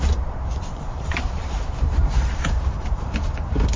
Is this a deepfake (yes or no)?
yes